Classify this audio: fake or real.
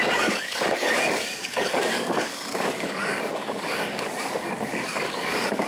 fake